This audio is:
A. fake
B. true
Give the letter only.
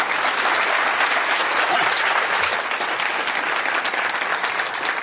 B